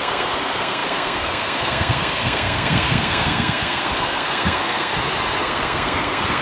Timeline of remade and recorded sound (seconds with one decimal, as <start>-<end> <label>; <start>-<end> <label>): 0.0-4.9 remade; 4.9-5.4 recorded; 5.4-6.4 remade